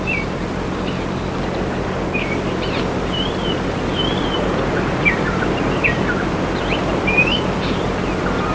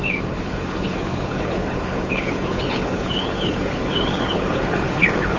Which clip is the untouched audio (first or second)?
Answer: first